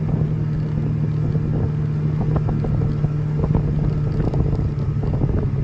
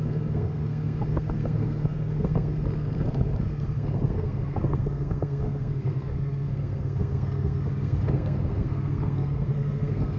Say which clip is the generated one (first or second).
second